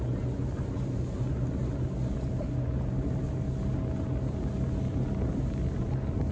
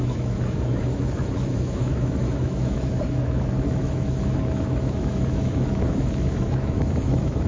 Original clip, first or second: first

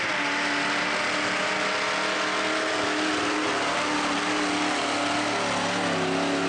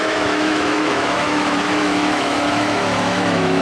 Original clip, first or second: first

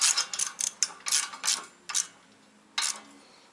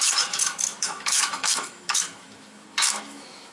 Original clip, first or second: first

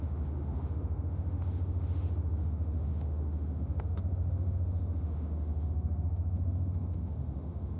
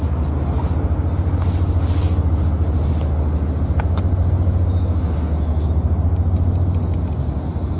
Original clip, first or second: second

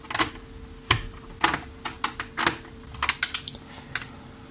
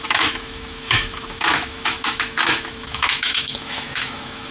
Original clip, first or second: first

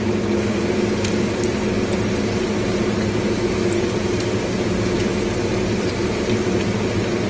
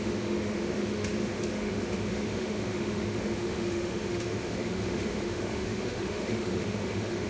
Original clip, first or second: first